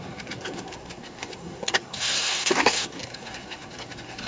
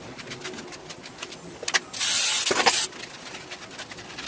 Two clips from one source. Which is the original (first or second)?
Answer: second